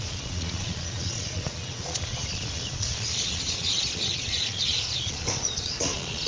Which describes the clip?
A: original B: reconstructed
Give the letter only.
B